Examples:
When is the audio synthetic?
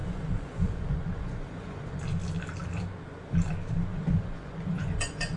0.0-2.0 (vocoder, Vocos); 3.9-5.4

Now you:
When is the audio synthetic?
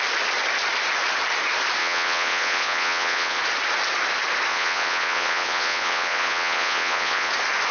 1.8-3.4 (vocoder, Vocos); 4.5-7.3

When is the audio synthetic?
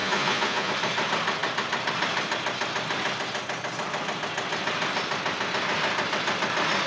0.0-0.7 (vocoder, Vocos)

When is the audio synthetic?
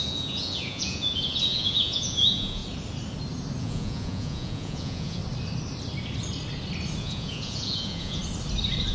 0.0-2.6 (vocoder, Vocos); 3.6-5.2; 7.0-8.2